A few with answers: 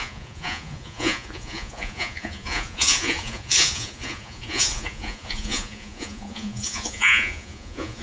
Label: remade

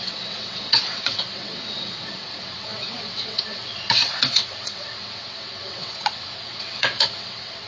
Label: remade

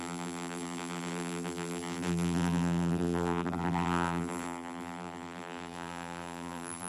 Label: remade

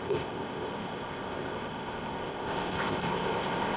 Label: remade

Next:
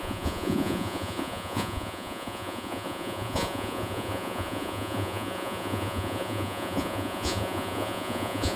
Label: remade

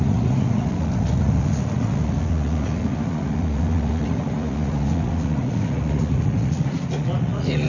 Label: remade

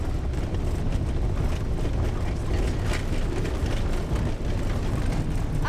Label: recorded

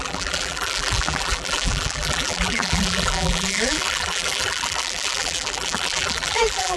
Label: remade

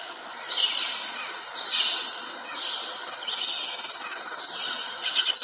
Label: recorded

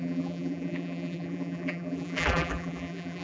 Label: remade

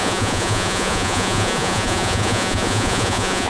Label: remade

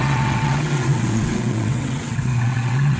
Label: remade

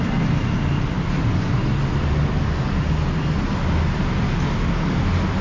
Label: recorded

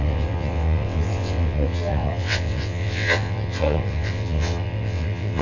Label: remade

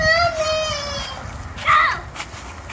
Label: recorded